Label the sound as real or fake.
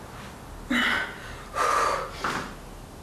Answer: real